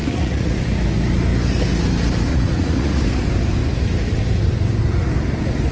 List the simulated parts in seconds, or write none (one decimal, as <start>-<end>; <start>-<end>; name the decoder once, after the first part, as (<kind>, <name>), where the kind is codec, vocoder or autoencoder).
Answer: 0.0-0.6 (vocoder, Vocos); 2.3-3.0